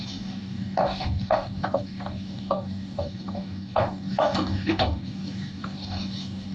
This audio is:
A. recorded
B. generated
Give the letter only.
B